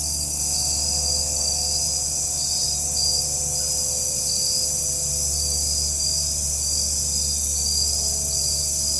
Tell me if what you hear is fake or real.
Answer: real